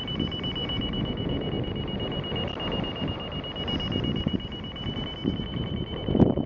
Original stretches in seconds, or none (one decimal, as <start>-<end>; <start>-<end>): 0.0-0.6; 1.5-6.5